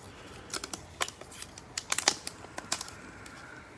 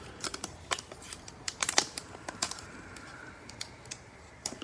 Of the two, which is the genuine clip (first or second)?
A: first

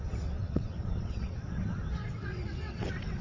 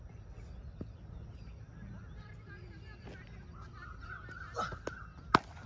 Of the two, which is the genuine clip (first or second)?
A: second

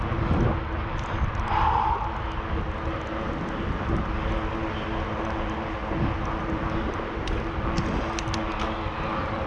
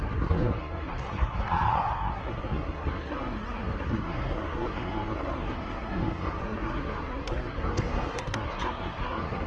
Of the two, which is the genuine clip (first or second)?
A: first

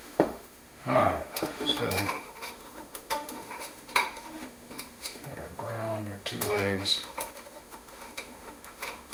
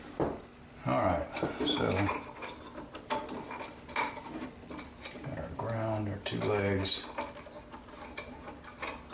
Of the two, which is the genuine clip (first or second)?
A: second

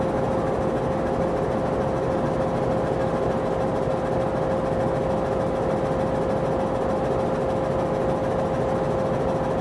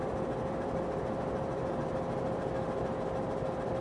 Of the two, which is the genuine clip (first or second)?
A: first